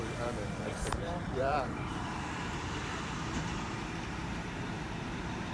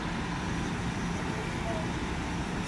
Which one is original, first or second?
second